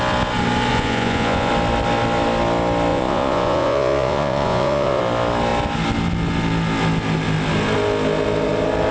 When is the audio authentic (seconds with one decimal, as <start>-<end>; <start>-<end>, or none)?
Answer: 0.0-0.7; 1.5-2.9; 5.0-8.9